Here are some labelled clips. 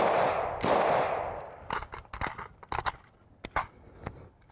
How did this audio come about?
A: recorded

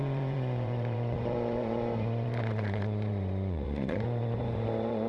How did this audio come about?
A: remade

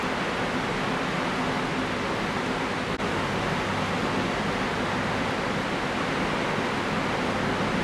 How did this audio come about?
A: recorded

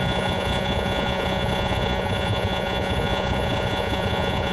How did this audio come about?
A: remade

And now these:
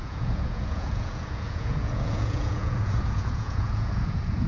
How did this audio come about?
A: remade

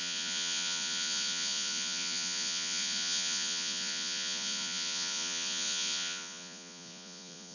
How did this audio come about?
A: remade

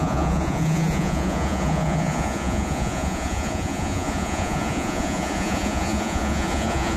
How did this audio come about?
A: remade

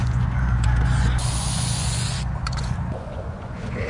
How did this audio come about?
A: remade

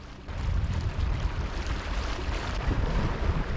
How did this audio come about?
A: recorded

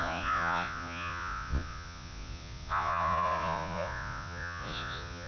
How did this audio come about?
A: remade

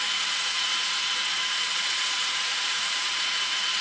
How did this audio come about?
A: remade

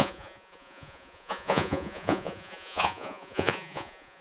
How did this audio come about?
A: remade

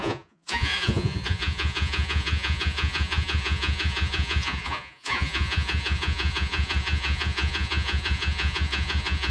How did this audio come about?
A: remade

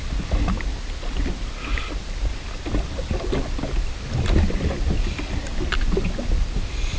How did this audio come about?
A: recorded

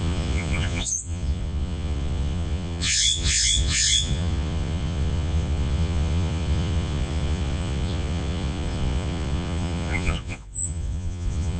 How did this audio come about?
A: remade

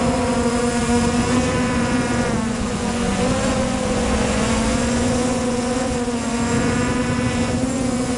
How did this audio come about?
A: remade